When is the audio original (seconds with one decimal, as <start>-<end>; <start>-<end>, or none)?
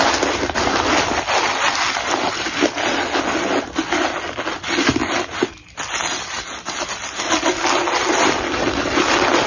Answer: 0.0-9.5